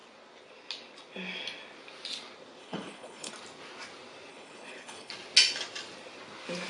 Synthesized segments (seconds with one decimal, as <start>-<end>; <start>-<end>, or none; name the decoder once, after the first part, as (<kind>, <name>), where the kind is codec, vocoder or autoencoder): 2.6-3.3 (codec, HILCodec); 4.3-5.1